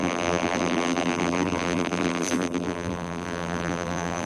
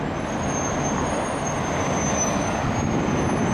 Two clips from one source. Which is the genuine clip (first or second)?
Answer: second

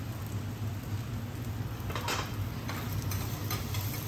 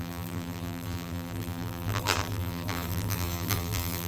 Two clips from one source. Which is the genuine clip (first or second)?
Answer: first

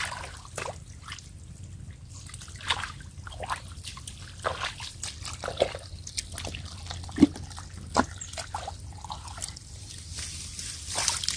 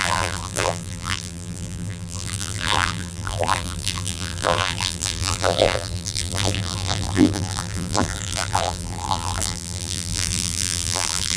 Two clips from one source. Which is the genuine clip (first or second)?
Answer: first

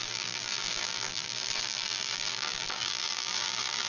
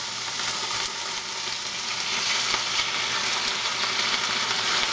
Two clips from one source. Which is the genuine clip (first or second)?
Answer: second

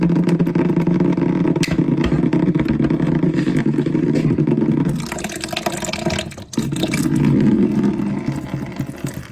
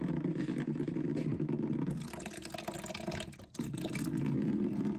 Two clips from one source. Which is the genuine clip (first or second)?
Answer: first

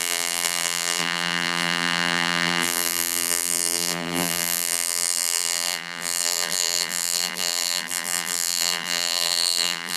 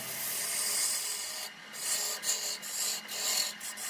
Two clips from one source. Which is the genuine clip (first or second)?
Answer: second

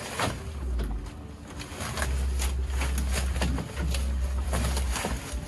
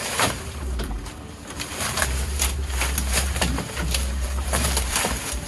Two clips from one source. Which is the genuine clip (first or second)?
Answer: first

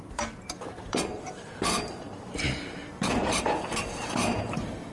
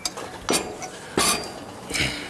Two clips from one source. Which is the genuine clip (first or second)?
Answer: second